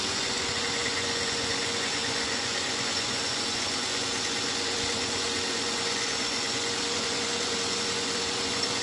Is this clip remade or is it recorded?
remade